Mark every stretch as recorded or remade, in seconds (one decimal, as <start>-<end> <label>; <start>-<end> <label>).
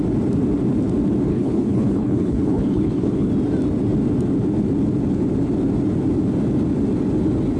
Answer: 0.0-1.3 recorded; 1.3-3.3 remade; 3.3-7.6 recorded